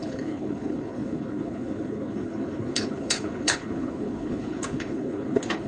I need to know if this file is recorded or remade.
remade